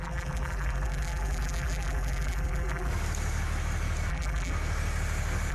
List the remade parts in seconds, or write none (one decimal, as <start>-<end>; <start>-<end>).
0.0-2.9; 4.1-4.5